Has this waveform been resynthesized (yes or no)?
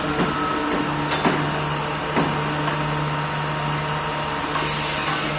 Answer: no